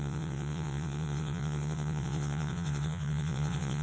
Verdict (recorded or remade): remade